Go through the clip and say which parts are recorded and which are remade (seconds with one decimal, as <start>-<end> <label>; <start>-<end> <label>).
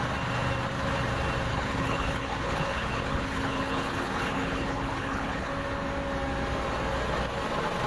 0.0-1.5 recorded; 1.5-5.5 remade; 5.5-7.9 recorded